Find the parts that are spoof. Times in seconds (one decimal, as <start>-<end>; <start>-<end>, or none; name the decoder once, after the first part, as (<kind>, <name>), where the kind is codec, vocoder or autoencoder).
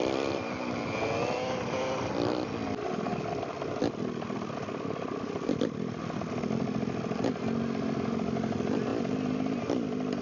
none